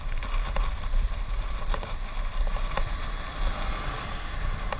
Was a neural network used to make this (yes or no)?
no